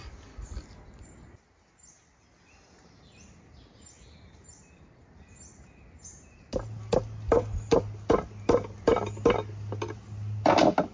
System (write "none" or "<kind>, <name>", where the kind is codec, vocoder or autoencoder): none